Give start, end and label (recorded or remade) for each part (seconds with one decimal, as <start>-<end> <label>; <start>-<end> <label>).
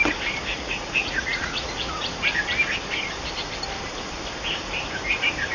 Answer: 0.0-0.5 recorded; 0.5-2.1 remade; 2.1-5.5 recorded